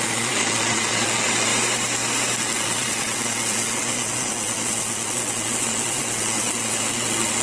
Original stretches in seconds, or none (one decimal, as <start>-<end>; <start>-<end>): 1.5-2.4